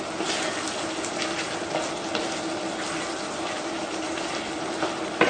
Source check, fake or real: real